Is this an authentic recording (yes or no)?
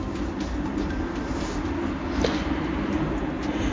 yes